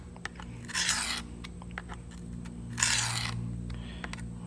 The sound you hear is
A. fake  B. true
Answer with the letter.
B